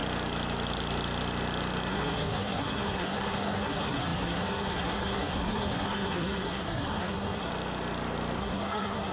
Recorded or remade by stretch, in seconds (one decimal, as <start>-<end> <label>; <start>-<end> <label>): 0.0-1.9 recorded; 1.9-7.5 remade; 7.5-8.4 recorded; 8.4-9.1 remade